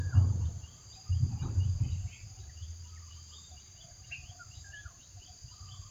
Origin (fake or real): fake